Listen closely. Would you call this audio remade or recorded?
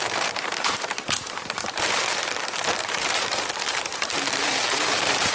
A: remade